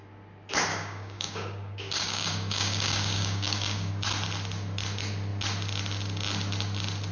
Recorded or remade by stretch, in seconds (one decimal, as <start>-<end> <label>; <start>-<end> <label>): 0.0-0.7 recorded; 0.7-3.9 remade; 3.9-7.1 recorded